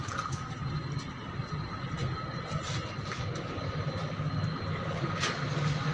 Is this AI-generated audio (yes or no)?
no